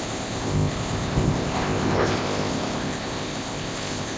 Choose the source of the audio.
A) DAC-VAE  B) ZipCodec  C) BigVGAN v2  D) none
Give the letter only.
B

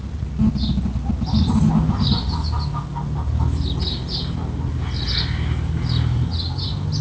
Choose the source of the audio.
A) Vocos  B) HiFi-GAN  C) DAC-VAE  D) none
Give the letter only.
D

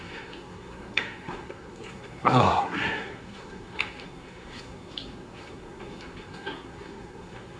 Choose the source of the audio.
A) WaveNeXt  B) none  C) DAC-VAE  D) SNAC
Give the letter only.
D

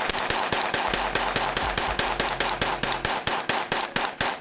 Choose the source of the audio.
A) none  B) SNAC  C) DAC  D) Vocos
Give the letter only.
A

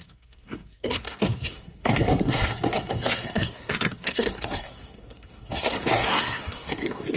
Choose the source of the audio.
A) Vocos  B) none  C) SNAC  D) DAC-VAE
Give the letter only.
C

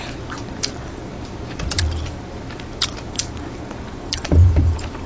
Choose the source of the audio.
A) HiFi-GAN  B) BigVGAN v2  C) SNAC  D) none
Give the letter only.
B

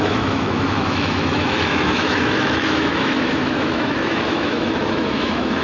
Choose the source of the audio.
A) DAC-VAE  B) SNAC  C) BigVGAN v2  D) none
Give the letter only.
A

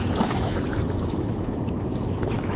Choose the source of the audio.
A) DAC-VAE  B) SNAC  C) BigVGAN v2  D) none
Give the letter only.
A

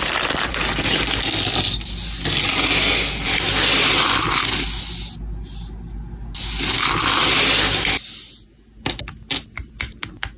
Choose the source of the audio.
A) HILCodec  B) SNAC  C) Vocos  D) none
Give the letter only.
D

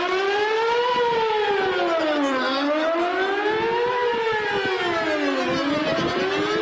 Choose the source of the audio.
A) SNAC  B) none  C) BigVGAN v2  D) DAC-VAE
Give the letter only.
B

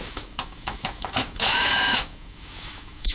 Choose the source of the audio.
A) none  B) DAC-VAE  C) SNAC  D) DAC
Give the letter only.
B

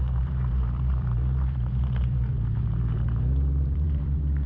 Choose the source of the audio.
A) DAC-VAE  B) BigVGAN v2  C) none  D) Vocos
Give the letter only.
B